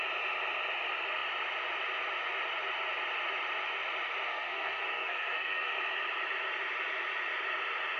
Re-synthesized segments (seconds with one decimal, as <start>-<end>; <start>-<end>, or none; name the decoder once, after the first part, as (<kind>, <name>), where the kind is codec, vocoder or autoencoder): 4.3-5.8 (codec, SNAC)